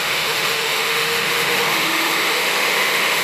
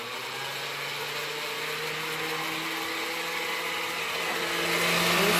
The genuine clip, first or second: second